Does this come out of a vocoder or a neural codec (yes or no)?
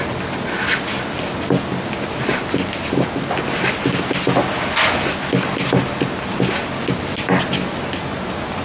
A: no